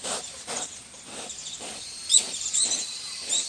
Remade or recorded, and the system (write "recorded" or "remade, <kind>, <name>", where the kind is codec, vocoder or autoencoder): remade, vocoder, BigVGAN v2